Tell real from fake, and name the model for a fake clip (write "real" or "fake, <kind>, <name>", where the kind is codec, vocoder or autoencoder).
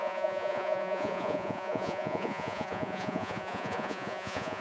fake, vocoder, Vocos